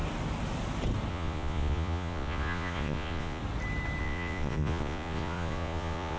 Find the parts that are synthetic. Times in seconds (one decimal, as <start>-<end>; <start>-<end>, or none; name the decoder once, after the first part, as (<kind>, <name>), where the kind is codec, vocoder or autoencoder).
1.1-3.4 (vocoder, Vocos); 4.0-6.2